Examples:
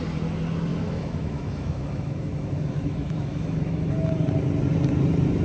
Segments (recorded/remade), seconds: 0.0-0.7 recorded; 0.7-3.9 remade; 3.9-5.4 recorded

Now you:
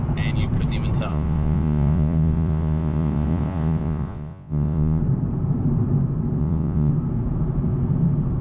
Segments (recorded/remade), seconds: 0.0-1.1 recorded; 1.1-5.0 remade; 5.0-6.4 recorded; 6.4-6.9 remade; 6.9-8.4 recorded

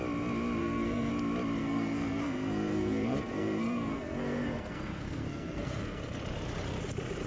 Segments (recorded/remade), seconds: 0.0-0.6 recorded; 0.6-1.1 remade; 1.1-1.6 recorded; 1.6-6.0 remade; 6.0-7.3 recorded